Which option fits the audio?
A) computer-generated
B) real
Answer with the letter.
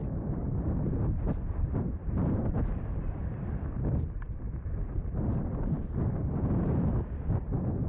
A